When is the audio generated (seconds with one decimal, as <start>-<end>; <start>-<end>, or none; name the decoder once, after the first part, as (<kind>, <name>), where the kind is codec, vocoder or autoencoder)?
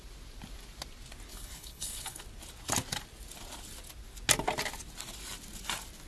1.3-2.2 (codec, HILCodec)